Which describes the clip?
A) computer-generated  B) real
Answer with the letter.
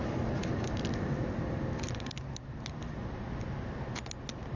B